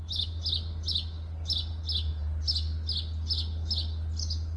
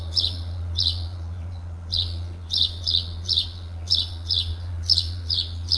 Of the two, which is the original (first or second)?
first